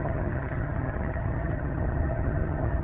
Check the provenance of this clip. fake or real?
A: fake